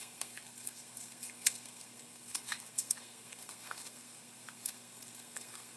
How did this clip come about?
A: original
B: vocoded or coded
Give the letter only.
B